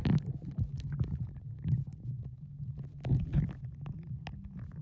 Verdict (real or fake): real